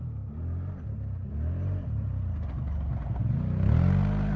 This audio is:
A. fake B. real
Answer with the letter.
B